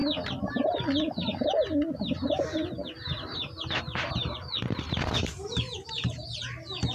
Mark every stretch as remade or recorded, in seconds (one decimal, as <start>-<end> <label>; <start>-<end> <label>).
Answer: 0.0-2.0 recorded; 2.0-6.9 remade